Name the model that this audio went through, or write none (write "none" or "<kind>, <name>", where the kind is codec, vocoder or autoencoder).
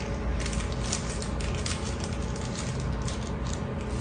none